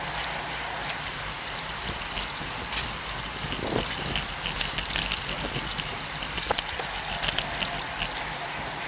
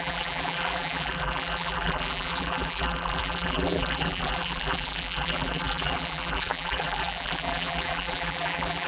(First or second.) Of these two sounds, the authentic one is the first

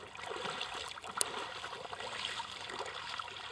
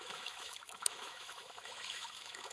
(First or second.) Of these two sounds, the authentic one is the first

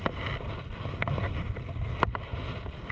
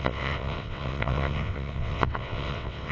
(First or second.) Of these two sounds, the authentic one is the first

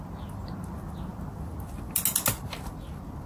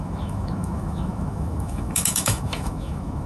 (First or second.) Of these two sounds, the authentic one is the first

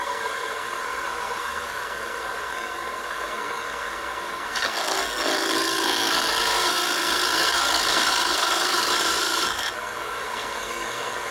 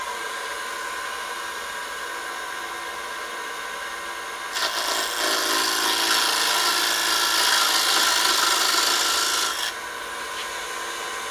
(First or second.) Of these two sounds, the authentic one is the second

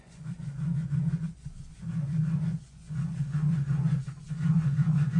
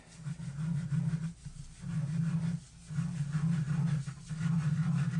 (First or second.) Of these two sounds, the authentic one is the second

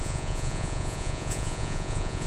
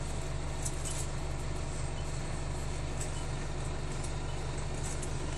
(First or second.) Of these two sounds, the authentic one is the second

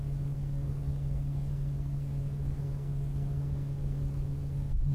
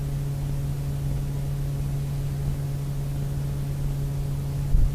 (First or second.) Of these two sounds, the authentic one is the second